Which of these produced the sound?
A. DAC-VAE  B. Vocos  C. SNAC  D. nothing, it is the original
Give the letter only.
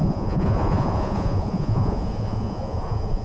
B